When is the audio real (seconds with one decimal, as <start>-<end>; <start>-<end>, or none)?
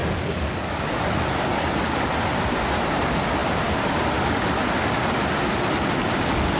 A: 0.9-6.6